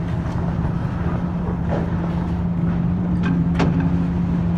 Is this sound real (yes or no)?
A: yes